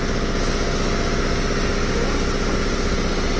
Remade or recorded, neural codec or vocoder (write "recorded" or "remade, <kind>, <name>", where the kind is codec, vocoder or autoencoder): recorded